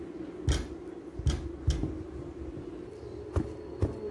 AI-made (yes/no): no